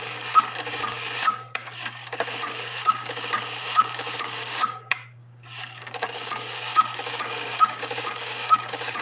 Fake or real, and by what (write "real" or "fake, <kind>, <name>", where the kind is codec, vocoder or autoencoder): fake, codec, DAC